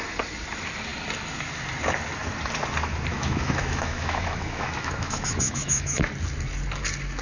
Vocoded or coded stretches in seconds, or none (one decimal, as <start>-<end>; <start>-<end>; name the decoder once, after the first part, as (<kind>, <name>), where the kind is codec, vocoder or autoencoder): 3.1-6.1 (autoencoder, DAC-VAE)